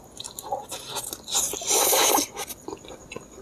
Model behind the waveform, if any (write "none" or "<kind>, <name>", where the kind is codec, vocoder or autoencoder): none